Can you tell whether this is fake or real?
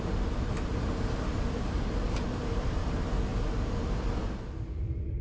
real